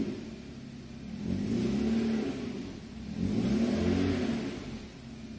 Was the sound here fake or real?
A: real